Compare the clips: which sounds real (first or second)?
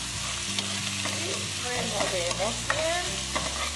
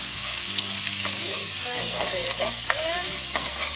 first